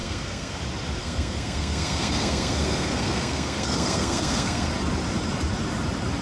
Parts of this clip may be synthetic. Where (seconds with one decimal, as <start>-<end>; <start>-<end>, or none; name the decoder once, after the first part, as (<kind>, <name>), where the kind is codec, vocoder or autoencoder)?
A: 0.0-0.6 (codec, SNAC); 1.0-4.7